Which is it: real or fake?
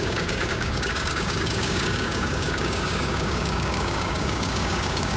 fake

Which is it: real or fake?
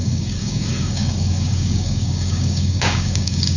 fake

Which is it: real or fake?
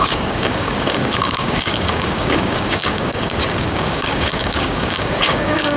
fake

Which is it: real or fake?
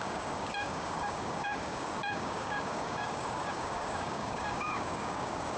fake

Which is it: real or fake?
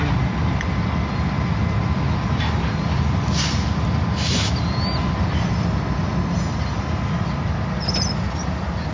real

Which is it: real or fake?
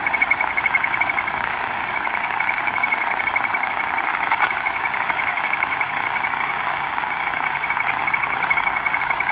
fake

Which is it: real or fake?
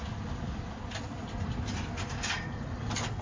real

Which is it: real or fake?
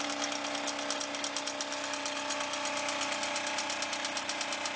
real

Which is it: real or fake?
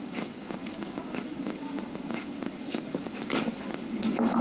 fake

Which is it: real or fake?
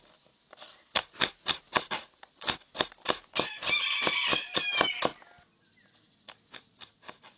real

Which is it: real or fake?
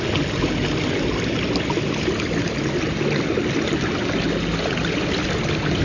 real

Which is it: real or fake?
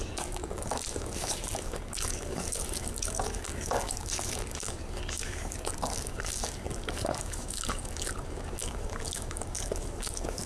fake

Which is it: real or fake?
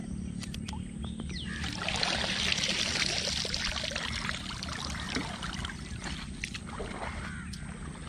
real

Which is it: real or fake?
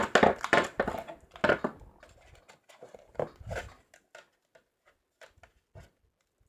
real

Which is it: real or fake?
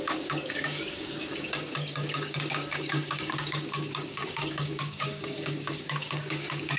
fake